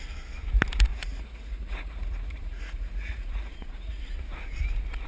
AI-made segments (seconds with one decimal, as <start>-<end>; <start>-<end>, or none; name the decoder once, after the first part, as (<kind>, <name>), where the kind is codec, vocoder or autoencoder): 0.9-4.0 (vocoder, Vocos)